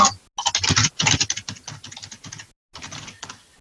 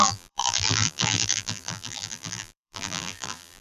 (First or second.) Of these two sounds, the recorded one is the first